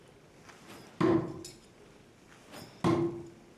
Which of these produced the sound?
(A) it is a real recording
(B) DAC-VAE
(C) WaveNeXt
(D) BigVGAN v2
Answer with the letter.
A